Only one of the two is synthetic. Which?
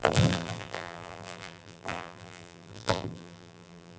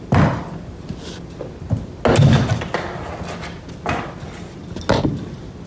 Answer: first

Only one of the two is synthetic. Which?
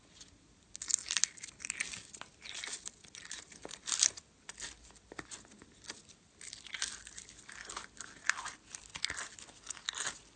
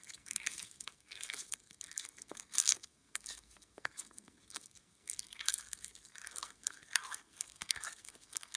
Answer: second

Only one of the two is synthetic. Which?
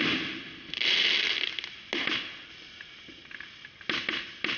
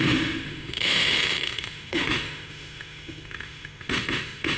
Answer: second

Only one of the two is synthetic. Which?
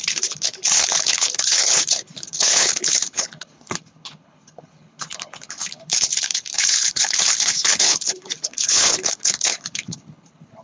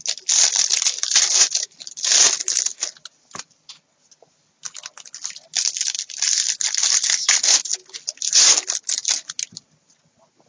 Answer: first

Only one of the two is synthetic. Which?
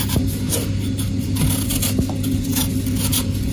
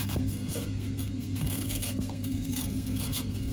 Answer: second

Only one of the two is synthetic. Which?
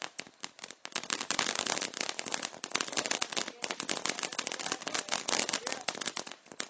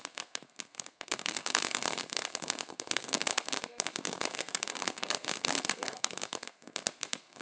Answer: second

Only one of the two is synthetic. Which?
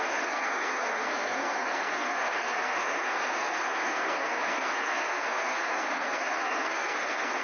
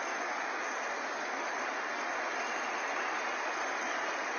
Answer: first